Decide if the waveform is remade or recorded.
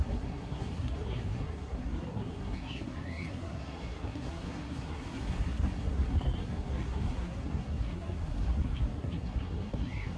remade